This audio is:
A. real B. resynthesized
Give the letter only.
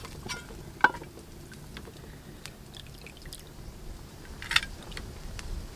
A